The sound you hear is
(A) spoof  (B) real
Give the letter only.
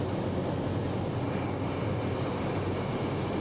B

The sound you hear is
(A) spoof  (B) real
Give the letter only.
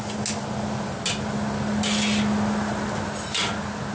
B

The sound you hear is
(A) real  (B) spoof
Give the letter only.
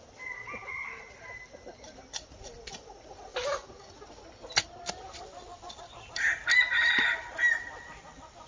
A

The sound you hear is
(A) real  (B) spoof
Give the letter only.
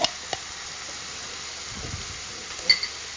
A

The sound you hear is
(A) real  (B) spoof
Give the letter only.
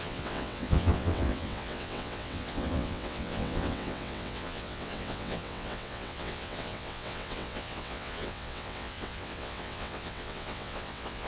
B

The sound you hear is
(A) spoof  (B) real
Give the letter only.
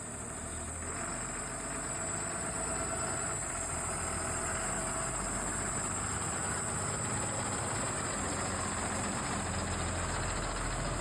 B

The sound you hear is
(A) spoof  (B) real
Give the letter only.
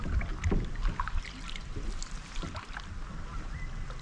B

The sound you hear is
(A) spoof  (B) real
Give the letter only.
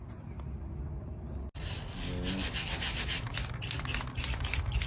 B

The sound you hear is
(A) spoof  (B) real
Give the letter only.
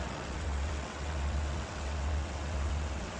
A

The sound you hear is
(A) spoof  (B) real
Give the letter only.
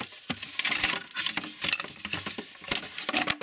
B